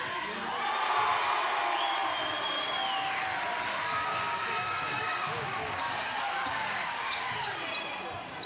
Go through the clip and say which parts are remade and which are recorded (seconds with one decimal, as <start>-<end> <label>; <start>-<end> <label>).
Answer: 0.0-4.1 recorded; 4.1-7.5 remade; 7.5-8.5 recorded